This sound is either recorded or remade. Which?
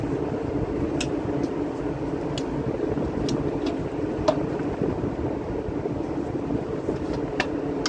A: recorded